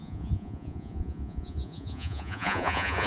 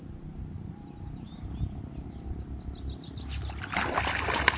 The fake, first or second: first